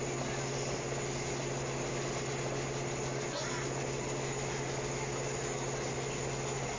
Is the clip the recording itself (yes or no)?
yes